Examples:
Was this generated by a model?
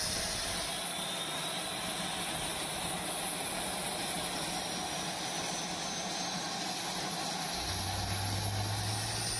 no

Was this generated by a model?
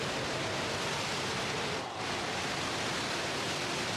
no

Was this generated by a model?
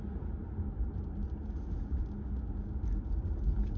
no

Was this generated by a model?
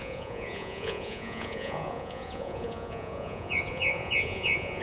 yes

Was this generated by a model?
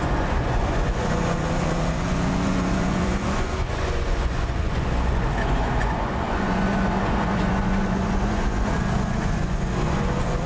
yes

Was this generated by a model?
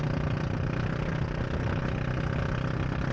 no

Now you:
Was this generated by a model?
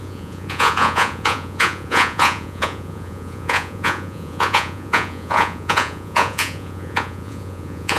yes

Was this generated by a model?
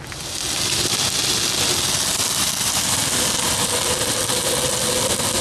no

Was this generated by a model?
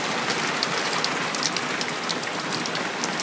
no